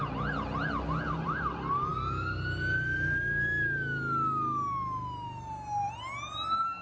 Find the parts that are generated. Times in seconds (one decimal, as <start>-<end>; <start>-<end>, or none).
none